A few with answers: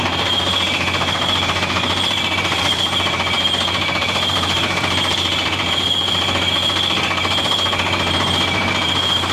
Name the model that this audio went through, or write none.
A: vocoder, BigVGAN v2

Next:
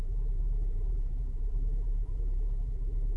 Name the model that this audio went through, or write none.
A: vocoder, BigVGAN v2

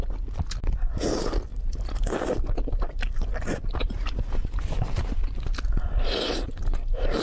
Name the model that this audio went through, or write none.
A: vocoder, BigVGAN v2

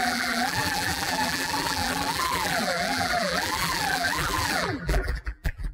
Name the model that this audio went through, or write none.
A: vocoder, BigVGAN v2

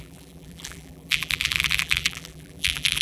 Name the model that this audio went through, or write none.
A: vocoder, BigVGAN v2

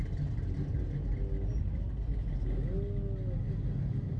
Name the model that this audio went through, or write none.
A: none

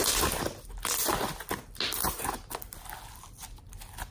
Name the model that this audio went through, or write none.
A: none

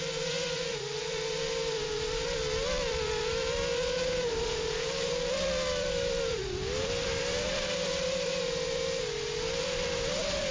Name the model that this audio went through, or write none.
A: vocoder, BigVGAN v2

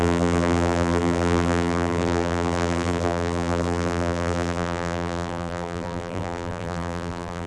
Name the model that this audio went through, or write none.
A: vocoder, BigVGAN v2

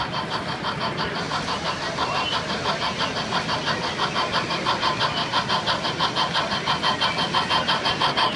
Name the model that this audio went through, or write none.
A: none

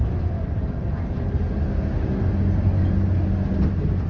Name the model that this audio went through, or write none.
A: none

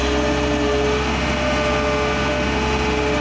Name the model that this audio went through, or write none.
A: none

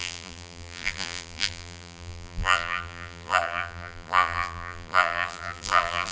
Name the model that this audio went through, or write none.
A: vocoder, BigVGAN v2